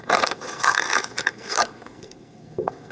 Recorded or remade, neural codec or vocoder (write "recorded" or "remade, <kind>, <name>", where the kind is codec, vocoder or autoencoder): remade, codec, SNAC